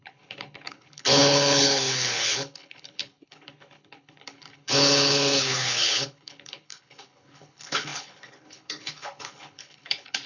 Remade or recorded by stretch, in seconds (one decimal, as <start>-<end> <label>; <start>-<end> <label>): 0.0-10.3 remade